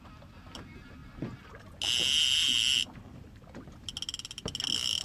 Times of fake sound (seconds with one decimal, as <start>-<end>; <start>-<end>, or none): none